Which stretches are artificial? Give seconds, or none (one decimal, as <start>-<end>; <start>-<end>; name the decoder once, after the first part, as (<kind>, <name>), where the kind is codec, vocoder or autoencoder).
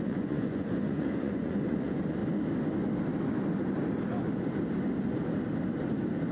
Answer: 0.0-2.2 (vocoder, Vocos)